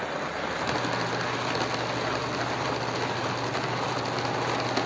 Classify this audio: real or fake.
real